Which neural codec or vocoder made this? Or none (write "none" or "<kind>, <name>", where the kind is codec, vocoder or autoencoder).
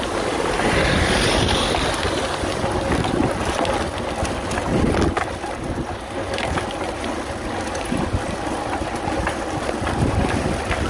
none